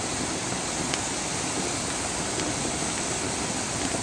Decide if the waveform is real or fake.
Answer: real